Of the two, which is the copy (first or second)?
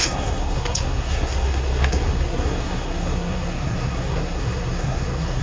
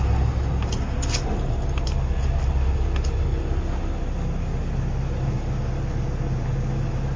first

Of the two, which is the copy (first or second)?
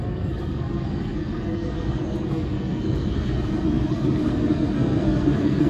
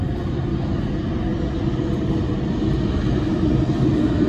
first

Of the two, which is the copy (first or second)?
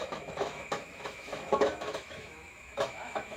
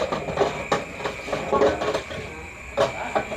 first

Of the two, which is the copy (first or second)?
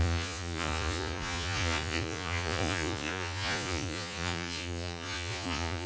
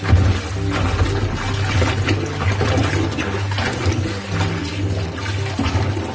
first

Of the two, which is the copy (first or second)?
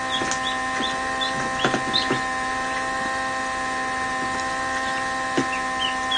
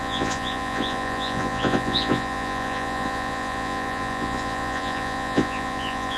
second